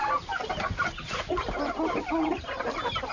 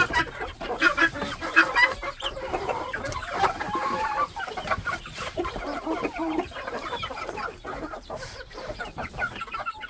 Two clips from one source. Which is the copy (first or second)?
second